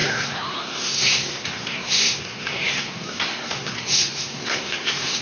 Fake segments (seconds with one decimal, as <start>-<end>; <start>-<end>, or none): 0.0-5.2